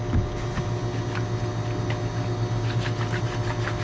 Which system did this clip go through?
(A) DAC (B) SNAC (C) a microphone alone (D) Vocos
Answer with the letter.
C